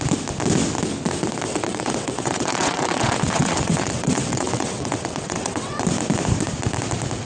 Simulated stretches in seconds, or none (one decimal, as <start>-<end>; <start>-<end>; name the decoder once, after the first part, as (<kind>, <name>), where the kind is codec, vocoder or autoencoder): 1.5-5.8 (vocoder, WaveNeXt)

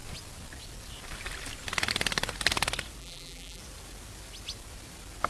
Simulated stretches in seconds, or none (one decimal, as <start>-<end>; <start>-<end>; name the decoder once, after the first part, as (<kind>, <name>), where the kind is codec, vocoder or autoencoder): 3.0-3.6 (vocoder, BigVGAN v2)

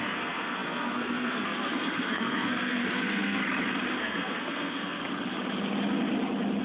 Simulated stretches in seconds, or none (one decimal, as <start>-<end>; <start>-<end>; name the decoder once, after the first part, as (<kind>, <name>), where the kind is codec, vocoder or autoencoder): 0.0-3.4 (codec, SNAC); 4.0-5.0

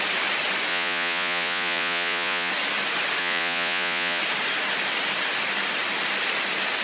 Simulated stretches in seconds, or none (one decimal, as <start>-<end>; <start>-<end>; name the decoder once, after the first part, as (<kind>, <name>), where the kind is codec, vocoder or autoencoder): 0.7-2.5 (vocoder, Vocos); 3.2-4.2